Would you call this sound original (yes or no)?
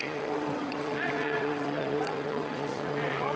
no